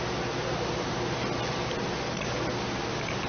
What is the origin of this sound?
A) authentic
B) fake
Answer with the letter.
A